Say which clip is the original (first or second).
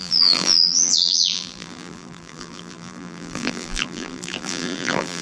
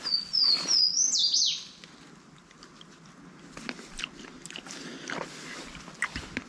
second